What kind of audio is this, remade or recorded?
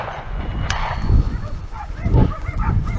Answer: remade